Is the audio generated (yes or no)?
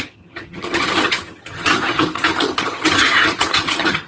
yes